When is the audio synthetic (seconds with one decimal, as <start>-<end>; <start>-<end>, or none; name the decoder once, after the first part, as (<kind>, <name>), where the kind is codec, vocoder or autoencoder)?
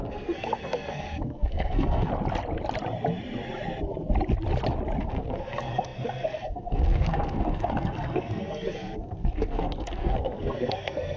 0.0-2.1 (codec, SNAC); 5.0-11.2